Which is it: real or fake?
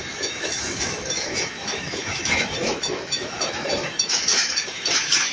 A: fake